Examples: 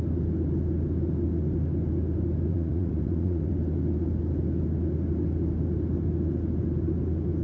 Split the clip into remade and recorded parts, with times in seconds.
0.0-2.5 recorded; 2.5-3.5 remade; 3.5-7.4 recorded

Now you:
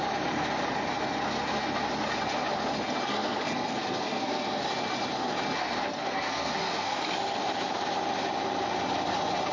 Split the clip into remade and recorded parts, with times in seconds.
0.0-3.1 recorded; 3.1-4.6 remade; 4.6-6.0 recorded; 6.0-7.0 remade; 7.0-9.5 recorded

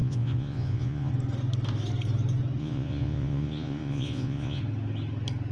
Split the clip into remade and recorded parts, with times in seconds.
0.0-1.1 remade; 1.1-2.6 recorded; 2.6-4.6 remade; 4.6-5.5 recorded

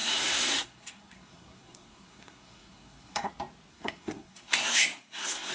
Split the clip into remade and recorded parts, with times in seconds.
0.0-3.3 remade; 3.3-3.7 recorded; 3.7-5.5 remade